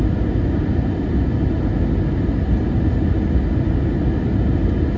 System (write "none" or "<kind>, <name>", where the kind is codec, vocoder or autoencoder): none